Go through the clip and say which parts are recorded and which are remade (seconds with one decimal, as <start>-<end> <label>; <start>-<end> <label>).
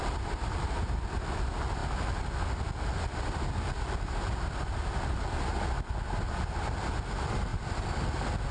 0.0-8.5 recorded